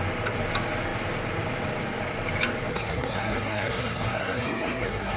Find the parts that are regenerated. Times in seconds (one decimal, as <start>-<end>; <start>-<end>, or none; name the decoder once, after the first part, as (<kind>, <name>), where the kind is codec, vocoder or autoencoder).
2.7-5.2 (codec, SNAC)